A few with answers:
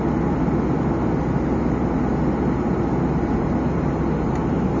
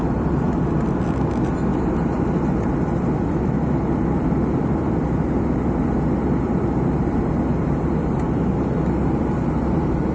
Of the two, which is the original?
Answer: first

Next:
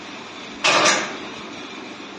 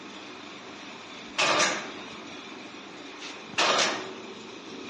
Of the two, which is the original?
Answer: first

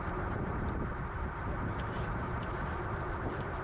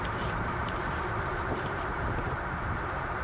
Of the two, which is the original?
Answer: first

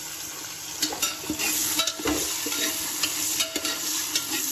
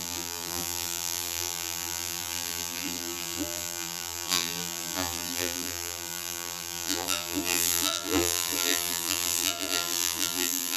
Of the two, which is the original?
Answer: first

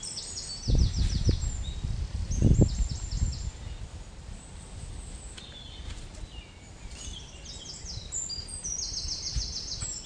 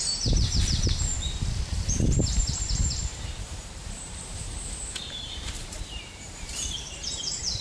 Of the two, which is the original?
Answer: first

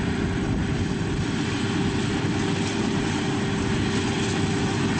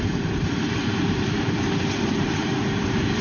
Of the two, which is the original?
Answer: first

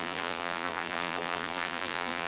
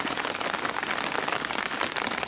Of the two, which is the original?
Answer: second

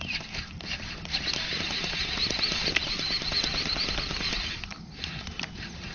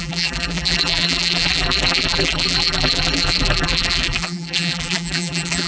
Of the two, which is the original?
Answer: first